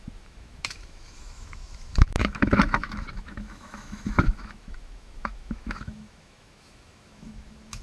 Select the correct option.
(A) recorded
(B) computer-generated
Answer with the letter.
B